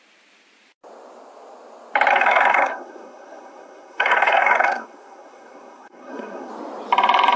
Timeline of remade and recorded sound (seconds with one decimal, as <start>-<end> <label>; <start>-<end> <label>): 0.0-2.1 recorded; 2.1-6.5 remade; 6.5-7.4 recorded